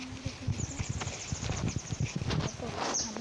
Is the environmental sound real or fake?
real